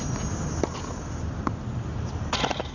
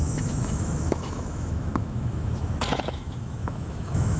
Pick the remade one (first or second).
second